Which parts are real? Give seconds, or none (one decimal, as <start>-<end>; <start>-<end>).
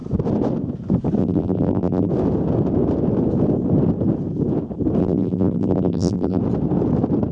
0.0-1.2; 2.1-5.0; 6.4-7.3